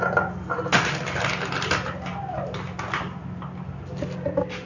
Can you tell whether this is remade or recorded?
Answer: recorded